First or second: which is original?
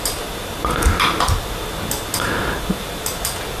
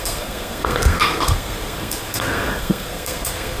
first